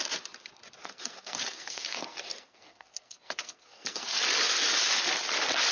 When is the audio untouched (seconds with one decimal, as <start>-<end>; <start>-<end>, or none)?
0.0-0.8; 4.2-5.7